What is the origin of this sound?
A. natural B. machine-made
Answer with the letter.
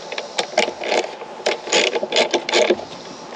A